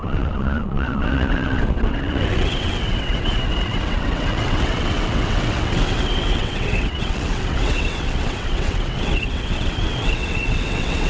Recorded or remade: remade